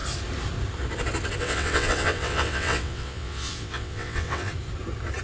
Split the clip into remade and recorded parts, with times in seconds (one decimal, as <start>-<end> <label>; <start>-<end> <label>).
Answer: 0.0-1.4 recorded; 1.4-4.5 remade; 4.5-5.2 recorded